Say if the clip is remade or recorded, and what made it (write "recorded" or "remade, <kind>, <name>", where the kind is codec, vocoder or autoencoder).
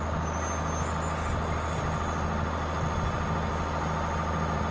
recorded